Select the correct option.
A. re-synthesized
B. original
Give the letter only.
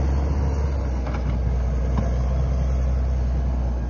B